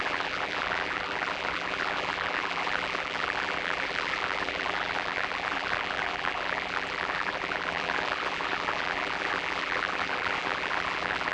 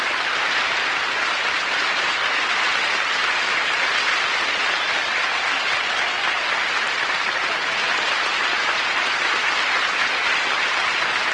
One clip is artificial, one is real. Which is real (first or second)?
second